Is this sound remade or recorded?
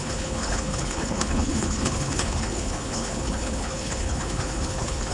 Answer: remade